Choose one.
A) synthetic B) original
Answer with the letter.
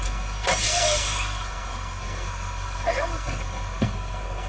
A